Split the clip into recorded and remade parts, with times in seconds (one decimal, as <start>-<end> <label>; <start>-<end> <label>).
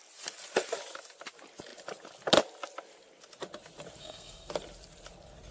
0.0-4.0 recorded; 4.0-4.5 remade; 4.5-5.5 recorded